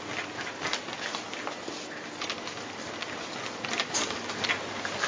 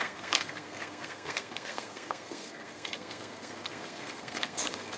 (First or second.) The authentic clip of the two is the first